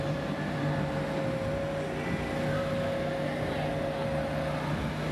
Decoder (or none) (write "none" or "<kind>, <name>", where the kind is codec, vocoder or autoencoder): none